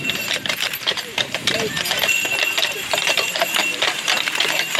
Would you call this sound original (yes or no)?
no